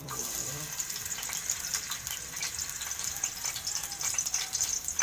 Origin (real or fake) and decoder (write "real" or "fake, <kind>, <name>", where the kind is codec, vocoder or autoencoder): fake, vocoder, BigVGAN v2